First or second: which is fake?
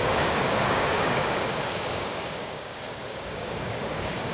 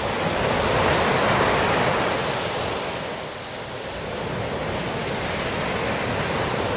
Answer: first